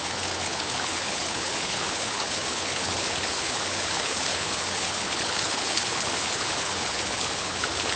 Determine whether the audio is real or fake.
fake